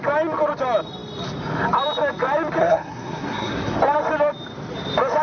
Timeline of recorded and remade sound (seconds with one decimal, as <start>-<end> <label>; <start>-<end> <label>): 0.0-2.6 recorded; 2.6-3.8 remade; 3.8-5.2 recorded